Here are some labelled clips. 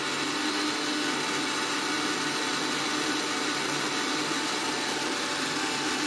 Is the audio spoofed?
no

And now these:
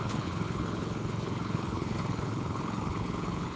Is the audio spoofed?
yes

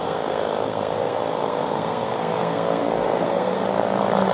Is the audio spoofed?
yes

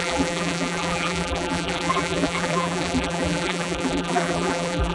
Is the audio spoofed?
yes